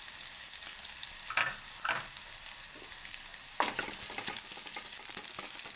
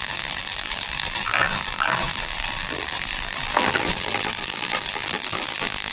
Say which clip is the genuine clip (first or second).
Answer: first